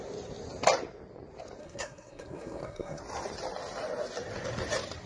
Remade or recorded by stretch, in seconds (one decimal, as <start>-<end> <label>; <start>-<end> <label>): 0.0-1.6 recorded; 1.6-3.0 remade; 3.0-5.1 recorded